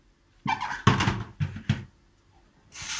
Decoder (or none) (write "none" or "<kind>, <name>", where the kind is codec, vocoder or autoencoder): none